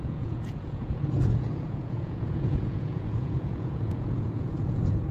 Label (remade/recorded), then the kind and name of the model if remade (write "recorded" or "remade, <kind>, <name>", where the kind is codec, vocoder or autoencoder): remade, vocoder, Vocos